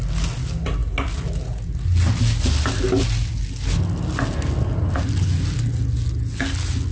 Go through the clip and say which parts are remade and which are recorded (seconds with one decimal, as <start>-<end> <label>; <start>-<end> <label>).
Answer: 0.0-6.9 recorded